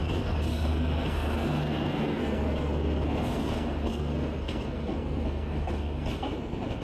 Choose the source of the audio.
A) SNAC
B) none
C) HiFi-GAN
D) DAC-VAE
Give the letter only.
A